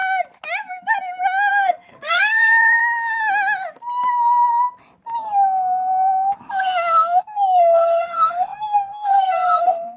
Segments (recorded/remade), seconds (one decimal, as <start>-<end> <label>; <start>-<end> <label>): 0.0-1.5 recorded; 1.5-2.8 remade; 2.8-7.2 recorded; 7.2-10.0 remade